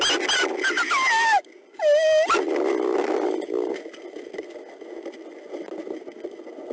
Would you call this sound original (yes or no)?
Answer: yes